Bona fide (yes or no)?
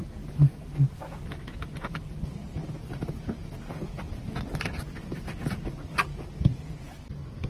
yes